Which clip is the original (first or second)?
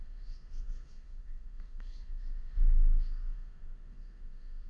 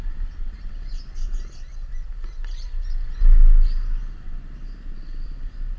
second